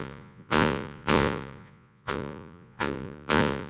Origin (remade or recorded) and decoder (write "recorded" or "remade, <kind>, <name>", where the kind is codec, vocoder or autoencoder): remade, vocoder, Vocos